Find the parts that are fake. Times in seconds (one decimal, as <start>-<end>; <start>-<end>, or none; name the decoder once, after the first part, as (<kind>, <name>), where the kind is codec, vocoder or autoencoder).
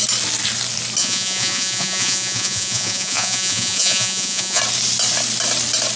1.0-4.6 (vocoder, Vocos)